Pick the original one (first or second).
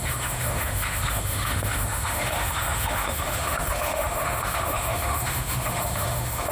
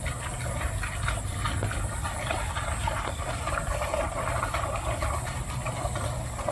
second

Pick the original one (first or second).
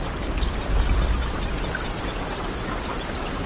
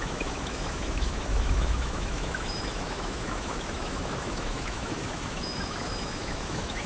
first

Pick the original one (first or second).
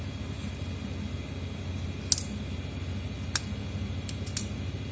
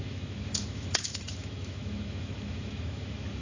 first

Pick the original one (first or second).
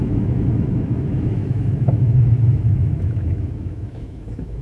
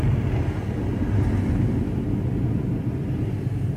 second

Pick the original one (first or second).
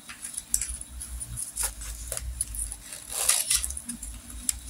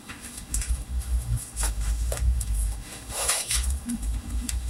first